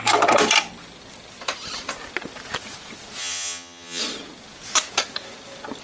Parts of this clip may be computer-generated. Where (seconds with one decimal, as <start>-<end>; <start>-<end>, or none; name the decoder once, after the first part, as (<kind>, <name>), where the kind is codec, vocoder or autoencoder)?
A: 3.2-4.0 (vocoder, HiFi-GAN)